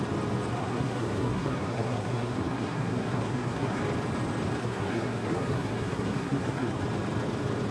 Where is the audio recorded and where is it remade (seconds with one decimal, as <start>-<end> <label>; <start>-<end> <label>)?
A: 0.0-0.6 recorded; 0.6-3.8 remade; 3.8-4.6 recorded; 4.6-6.8 remade; 6.8-7.7 recorded

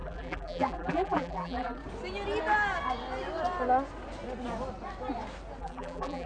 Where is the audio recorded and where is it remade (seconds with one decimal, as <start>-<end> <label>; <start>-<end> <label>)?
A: 0.0-1.8 remade; 1.8-5.6 recorded; 5.6-6.3 remade

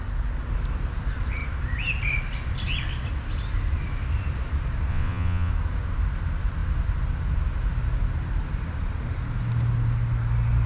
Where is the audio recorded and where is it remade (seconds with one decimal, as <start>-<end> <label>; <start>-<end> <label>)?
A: 0.0-4.9 recorded; 4.9-5.5 remade; 5.5-10.7 recorded